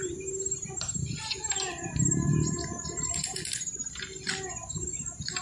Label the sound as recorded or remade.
recorded